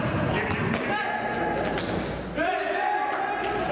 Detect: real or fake real